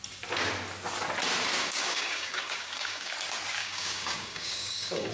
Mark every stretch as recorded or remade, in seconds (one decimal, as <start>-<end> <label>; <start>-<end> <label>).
0.0-1.6 recorded; 1.6-3.1 remade; 3.1-3.6 recorded; 3.6-5.1 remade